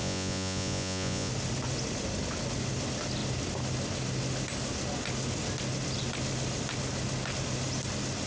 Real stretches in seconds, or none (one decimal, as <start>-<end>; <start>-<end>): 1.3-8.3